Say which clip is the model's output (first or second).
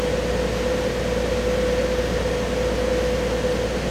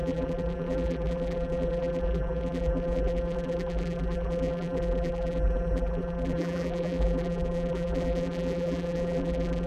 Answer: second